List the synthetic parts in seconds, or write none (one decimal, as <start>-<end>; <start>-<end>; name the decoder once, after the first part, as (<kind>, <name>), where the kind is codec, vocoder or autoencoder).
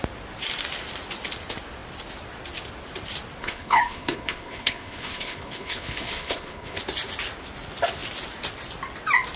3.4-6.8 (codec, HILCodec)